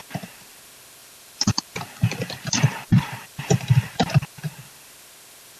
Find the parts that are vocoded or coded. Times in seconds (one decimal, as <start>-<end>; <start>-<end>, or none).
1.0-4.4